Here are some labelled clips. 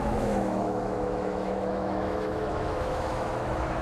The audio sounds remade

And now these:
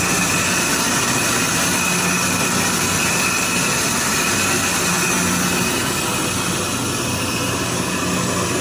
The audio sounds recorded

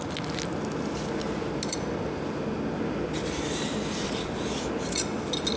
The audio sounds recorded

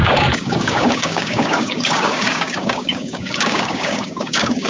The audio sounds remade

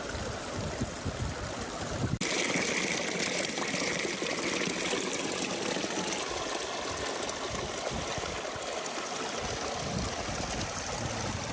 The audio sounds recorded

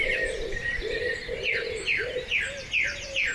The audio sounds remade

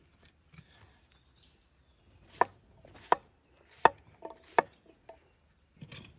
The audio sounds recorded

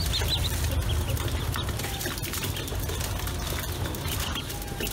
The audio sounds recorded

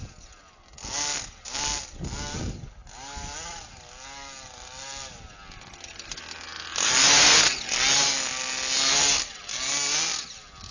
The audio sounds recorded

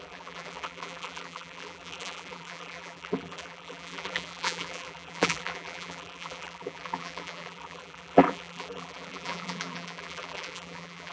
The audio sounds remade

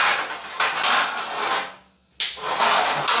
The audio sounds recorded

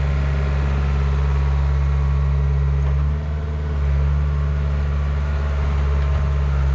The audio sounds recorded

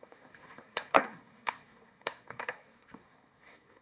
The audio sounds remade